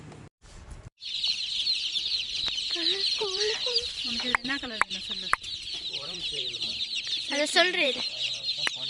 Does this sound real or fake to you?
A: fake